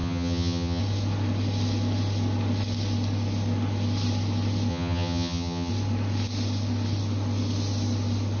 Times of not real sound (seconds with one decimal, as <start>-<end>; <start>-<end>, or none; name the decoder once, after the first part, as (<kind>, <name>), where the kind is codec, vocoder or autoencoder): 0.0-0.8 (vocoder, HiFi-GAN); 4.7-5.7

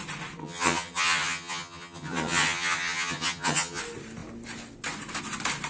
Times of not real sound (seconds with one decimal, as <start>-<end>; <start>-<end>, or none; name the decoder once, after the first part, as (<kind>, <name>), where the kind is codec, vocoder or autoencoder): 0.4-3.8 (vocoder, HiFi-GAN)

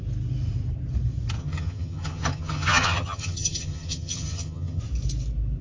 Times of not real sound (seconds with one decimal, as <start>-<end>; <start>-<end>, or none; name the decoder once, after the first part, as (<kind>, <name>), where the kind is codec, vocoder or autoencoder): 1.4-4.8 (vocoder, HiFi-GAN)

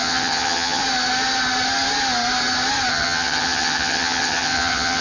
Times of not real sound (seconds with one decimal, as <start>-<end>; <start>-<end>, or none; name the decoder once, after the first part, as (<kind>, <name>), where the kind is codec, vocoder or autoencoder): 0.0-0.8 (vocoder, HiFi-GAN); 2.9-5.0